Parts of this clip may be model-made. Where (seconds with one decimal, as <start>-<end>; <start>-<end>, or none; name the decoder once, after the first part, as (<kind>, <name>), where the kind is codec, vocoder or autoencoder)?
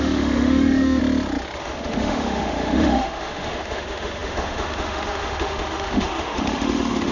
0.0-1.0 (autoencoder, DAC-VAE); 1.6-7.1